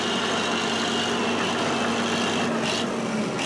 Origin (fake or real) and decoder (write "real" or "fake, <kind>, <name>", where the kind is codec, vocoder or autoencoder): real